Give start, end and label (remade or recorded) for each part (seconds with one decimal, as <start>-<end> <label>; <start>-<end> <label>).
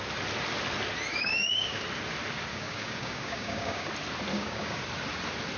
0.0-1.1 recorded; 1.1-1.8 remade; 1.8-2.5 recorded; 2.5-3.9 remade; 3.9-4.3 recorded; 4.3-4.8 remade; 4.8-5.6 recorded